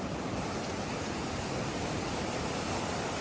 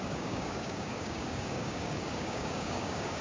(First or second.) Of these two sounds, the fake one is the second